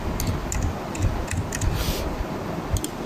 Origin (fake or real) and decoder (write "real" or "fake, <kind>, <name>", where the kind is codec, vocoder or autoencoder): real